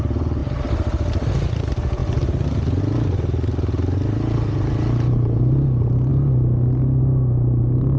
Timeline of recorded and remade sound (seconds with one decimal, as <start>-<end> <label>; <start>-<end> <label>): 0.0-8.0 recorded